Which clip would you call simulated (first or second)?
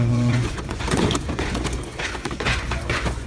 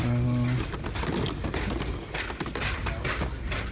first